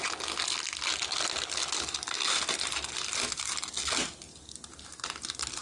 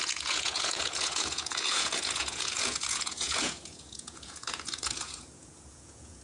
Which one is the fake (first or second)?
second